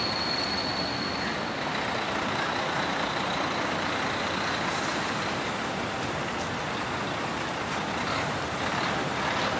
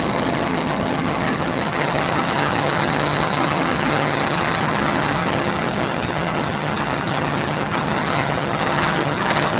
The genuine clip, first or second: first